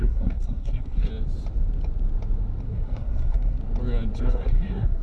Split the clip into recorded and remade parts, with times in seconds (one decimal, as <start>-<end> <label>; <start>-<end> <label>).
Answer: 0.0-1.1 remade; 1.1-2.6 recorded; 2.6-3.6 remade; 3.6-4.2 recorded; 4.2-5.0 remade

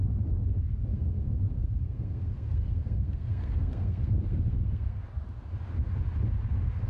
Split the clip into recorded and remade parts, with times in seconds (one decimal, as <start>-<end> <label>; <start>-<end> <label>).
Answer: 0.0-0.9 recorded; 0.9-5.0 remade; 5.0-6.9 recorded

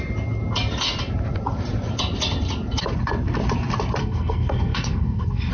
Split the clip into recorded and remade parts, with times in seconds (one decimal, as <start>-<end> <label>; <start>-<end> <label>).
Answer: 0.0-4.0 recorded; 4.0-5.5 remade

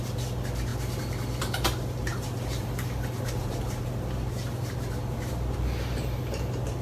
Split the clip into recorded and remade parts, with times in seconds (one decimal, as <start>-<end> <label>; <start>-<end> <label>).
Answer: 0.0-6.8 recorded